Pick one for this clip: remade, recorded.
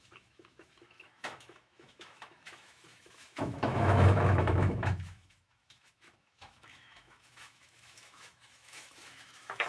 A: remade